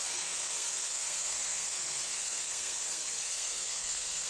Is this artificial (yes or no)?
yes